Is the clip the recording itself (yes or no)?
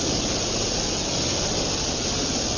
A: yes